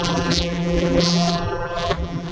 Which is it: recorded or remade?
remade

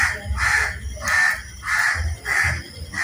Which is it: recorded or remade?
recorded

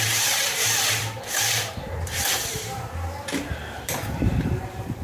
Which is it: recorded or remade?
remade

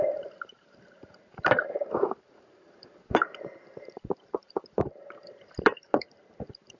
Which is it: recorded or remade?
remade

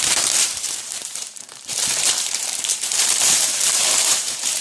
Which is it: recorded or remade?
remade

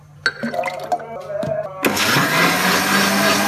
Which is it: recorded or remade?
recorded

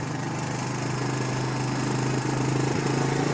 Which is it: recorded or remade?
recorded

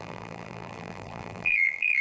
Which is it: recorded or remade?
remade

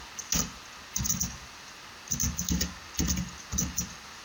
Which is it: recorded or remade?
recorded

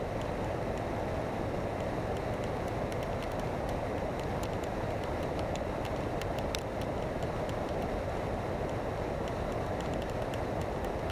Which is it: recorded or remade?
recorded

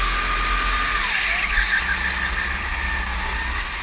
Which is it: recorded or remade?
recorded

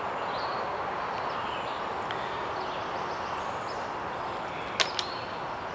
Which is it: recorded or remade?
recorded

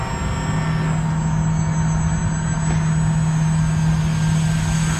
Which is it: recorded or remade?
recorded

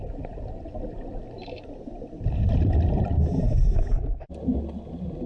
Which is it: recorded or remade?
recorded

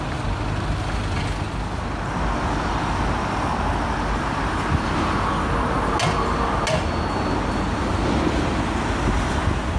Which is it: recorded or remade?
recorded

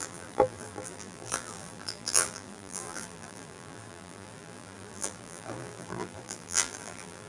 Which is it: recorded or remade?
remade